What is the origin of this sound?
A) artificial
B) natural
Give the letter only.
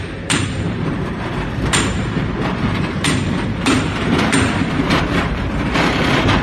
A